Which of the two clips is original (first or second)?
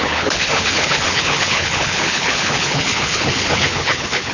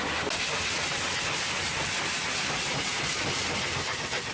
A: second